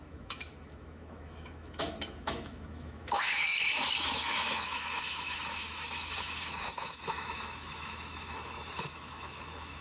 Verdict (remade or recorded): remade